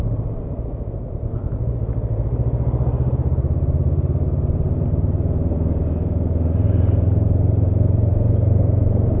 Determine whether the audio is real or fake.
real